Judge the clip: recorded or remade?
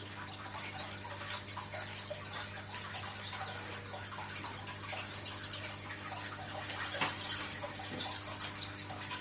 recorded